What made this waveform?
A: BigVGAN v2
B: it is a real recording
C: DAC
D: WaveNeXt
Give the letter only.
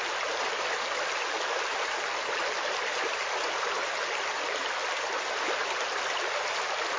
B